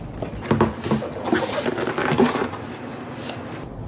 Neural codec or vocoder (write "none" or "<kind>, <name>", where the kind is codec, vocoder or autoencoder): none